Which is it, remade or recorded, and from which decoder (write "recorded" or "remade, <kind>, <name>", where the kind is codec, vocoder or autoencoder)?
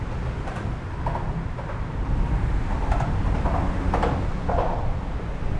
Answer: recorded